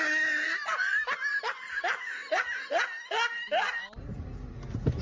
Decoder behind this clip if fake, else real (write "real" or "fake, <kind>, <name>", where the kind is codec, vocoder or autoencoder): real